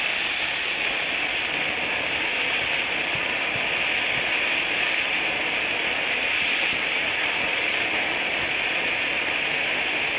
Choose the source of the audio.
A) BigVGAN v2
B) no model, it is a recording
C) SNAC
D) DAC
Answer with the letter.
B